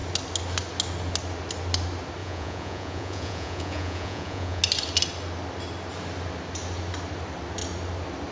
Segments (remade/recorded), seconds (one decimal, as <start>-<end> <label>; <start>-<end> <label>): 0.0-2.2 recorded; 2.2-4.6 remade; 4.6-8.3 recorded